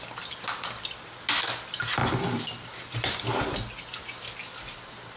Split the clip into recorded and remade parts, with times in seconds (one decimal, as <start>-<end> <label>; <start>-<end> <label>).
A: 0.0-5.2 recorded